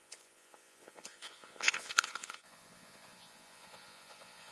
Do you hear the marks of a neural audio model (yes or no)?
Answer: yes